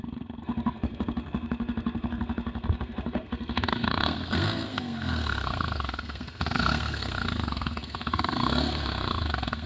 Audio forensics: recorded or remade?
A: remade